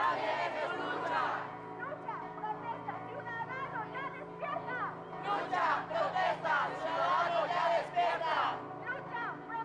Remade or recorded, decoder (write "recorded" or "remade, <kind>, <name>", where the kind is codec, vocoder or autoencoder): recorded